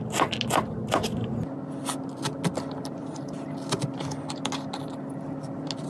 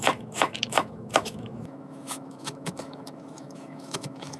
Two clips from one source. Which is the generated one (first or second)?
second